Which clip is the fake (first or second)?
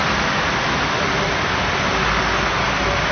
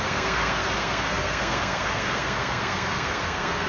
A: second